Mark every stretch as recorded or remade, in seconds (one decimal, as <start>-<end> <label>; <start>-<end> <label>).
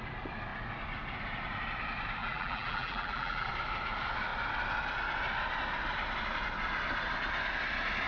0.0-2.2 recorded; 2.2-3.5 remade; 3.5-8.1 recorded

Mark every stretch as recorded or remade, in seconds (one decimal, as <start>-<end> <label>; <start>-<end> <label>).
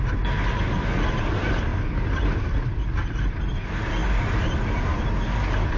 0.0-4.0 recorded; 4.0-5.0 remade; 5.0-5.8 recorded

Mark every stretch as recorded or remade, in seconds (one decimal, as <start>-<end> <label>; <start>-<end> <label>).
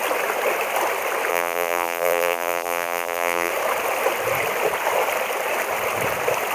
0.0-1.3 recorded; 1.3-3.5 remade; 3.5-6.5 recorded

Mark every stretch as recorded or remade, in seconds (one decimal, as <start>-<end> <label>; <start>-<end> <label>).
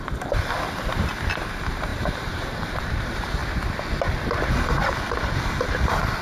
0.0-3.4 remade; 3.4-6.2 recorded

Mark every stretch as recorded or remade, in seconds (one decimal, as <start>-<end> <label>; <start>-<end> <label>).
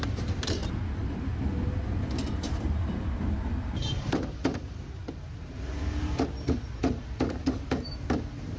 0.0-0.6 remade; 0.6-2.3 recorded; 2.3-5.0 remade; 5.0-6.8 recorded; 6.8-8.6 remade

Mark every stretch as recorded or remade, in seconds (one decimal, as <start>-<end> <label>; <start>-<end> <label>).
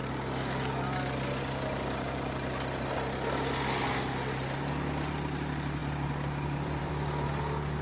0.0-5.8 recorded; 5.8-6.9 remade; 6.9-7.8 recorded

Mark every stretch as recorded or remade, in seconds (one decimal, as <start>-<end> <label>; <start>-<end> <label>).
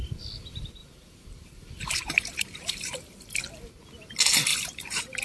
0.0-0.8 recorded; 0.8-3.7 remade; 3.7-4.5 recorded; 4.5-5.2 remade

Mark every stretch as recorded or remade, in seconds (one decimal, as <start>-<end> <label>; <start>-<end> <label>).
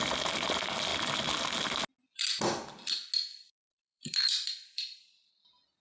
0.0-3.3 recorded; 3.3-5.3 remade; 5.3-5.8 recorded